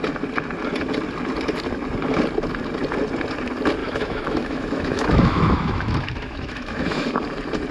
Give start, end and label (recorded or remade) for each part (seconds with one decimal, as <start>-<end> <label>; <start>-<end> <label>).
0.0-3.8 recorded; 3.8-7.1 remade; 7.1-7.7 recorded